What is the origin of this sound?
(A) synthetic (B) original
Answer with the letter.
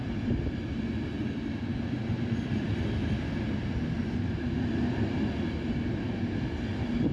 B